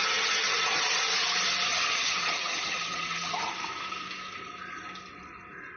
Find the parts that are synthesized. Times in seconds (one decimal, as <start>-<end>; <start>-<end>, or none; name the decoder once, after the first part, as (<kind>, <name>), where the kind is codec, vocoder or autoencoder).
0.0-0.8 (vocoder, HiFi-GAN); 1.7-3.5